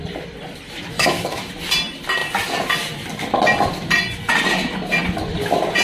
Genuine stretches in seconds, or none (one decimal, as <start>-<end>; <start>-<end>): 0.0-0.9; 1.5-5.8